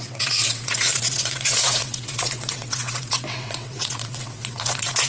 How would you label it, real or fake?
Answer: fake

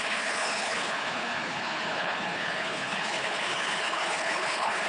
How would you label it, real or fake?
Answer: fake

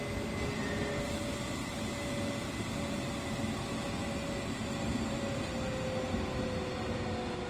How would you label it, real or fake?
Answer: real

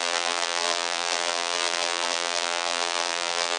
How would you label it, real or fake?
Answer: fake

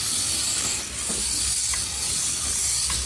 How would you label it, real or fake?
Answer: real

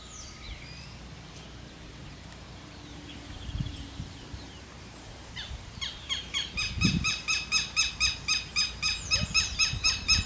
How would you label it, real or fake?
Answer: fake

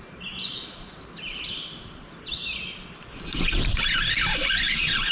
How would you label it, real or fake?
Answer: real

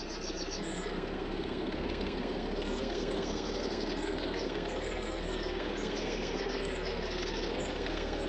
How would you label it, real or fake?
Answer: fake